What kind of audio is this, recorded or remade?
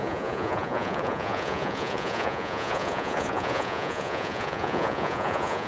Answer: remade